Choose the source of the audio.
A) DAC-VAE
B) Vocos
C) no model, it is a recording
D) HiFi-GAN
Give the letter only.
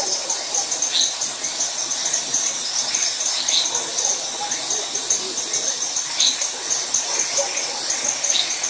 C